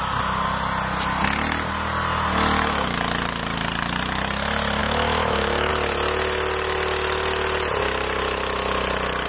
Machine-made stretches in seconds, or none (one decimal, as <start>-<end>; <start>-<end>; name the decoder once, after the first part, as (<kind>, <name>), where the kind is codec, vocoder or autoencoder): 4.8-5.7 (autoencoder, DAC-VAE)